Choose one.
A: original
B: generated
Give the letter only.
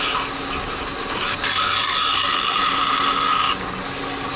A